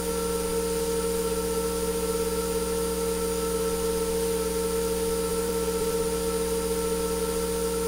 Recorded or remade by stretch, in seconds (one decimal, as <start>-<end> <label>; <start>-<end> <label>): 0.0-5.3 recorded; 5.3-6.0 remade; 6.0-7.9 recorded